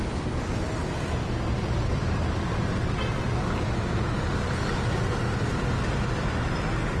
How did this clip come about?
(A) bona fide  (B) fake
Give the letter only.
A